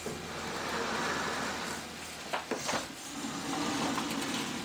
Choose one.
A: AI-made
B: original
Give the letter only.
B